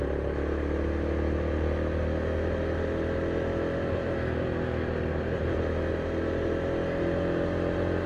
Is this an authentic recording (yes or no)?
yes